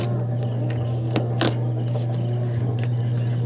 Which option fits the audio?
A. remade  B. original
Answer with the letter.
B